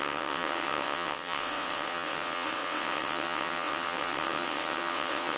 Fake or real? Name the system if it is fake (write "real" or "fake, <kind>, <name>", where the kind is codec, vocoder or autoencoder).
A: fake, vocoder, WaveNeXt